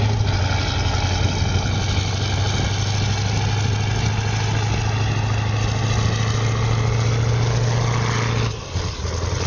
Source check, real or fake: real